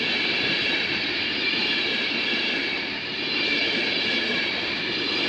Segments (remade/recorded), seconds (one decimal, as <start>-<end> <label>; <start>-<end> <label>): 0.0-0.6 recorded; 0.6-2.1 remade; 2.1-5.3 recorded